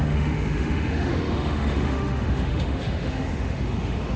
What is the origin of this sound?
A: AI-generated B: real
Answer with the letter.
A